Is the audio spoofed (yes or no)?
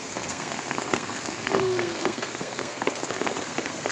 yes